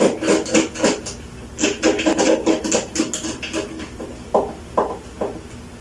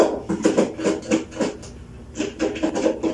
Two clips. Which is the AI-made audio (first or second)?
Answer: second